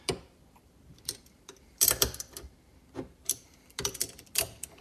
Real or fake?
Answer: fake